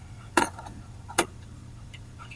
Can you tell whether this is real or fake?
fake